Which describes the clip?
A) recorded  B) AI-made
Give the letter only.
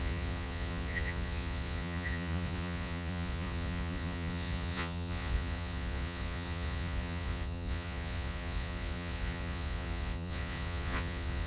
B